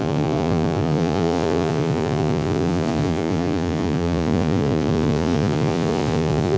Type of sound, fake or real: fake